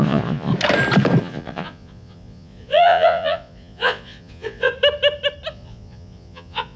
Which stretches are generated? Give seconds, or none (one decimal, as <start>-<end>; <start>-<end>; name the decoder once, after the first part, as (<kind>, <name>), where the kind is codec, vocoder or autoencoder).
0.0-0.5 (vocoder, Vocos); 1.2-4.7; 5.5-6.8

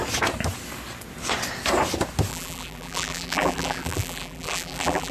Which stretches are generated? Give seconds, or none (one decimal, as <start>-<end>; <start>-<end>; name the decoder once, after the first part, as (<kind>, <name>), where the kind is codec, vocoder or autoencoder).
2.3-5.1 (vocoder, BigVGAN v2)

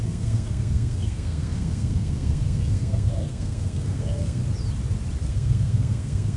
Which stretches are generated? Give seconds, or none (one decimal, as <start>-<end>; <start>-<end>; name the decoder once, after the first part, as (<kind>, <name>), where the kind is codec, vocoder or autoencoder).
0.0-4.4 (codec, SNAC); 5.3-6.4

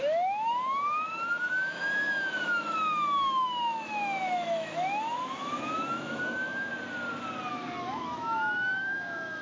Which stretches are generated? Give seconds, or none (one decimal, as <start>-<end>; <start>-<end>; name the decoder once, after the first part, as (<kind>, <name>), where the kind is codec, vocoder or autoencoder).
0.0-6.7 (autoencoder, DAC-VAE); 7.5-9.4

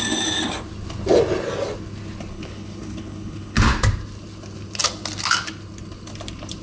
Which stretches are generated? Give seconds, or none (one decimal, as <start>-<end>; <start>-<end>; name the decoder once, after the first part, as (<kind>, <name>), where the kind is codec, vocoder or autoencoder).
2.3-3.6 (codec, HILCodec)